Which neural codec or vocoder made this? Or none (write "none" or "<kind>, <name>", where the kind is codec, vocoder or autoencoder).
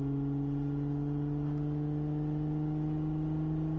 none